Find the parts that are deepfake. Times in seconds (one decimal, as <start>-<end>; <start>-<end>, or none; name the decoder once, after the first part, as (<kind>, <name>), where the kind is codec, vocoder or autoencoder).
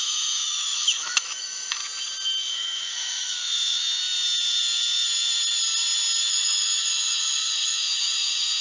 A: 0.0-1.8 (autoencoder, DAC-VAE); 2.5-4.0; 6.3-8.6